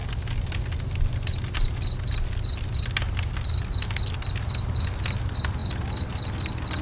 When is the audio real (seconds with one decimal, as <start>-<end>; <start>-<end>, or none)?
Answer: 0.0-6.8